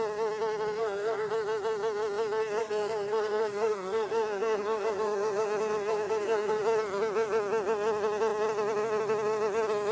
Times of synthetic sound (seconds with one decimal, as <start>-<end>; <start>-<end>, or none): 0.8-1.3; 2.6-6.6